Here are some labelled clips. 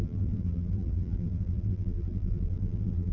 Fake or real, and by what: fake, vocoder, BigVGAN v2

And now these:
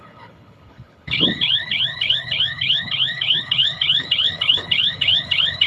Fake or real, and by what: fake, codec, HILCodec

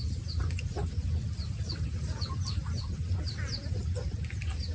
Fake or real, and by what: real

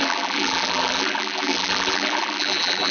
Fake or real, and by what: fake, vocoder, BigVGAN v2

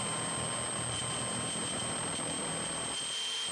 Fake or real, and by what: real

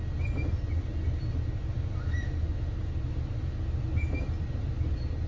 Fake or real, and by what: real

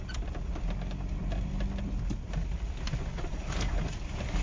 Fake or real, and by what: real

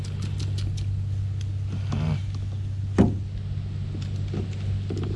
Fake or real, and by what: real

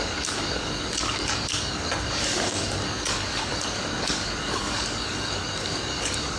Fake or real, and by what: fake, codec, DAC